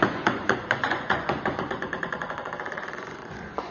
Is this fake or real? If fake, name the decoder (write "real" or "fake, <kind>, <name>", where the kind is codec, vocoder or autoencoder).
fake, vocoder, Vocos